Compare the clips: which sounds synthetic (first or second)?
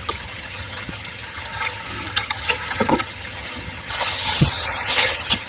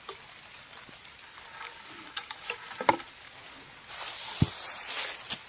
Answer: first